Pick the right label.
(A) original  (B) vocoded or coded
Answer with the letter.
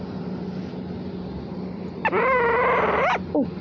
A